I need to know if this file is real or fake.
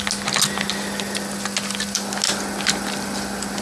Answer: real